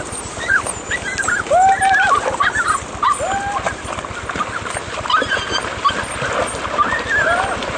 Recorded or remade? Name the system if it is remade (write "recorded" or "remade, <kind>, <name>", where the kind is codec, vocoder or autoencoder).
recorded